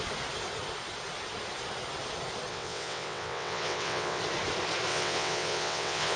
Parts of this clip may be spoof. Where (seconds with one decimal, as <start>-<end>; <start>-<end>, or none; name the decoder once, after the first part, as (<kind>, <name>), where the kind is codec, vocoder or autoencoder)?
2.5-4.2 (vocoder, WaveNeXt); 4.9-6.2